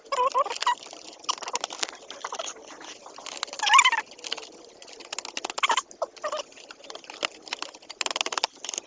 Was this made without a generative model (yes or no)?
yes